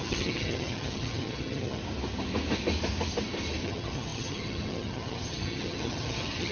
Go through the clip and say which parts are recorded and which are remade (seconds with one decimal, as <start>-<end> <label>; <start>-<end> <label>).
0.0-1.8 remade; 1.8-3.6 recorded; 3.6-6.5 remade